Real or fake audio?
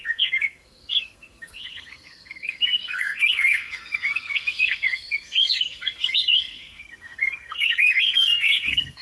fake